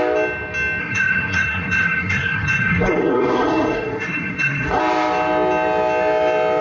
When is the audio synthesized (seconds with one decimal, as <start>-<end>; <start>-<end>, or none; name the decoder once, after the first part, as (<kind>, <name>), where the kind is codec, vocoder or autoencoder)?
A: 0.8-4.8 (codec, SNAC)